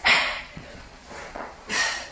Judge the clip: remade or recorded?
remade